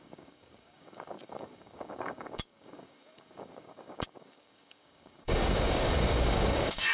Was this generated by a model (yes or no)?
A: yes